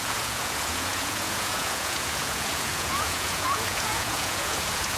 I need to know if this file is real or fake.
fake